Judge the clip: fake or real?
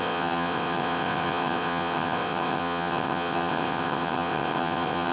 fake